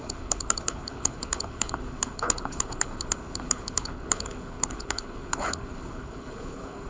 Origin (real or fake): fake